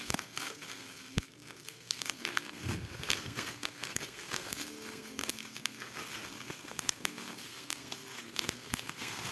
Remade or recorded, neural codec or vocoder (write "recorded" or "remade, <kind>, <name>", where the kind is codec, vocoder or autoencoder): remade, codec, SNAC